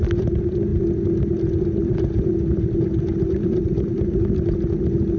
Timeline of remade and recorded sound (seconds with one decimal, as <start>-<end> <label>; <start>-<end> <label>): 0.0-5.2 recorded